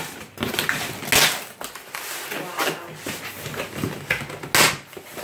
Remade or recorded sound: recorded